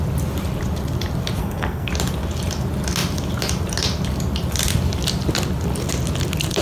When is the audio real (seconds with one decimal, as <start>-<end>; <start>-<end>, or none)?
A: 0.0-1.4; 1.9-6.6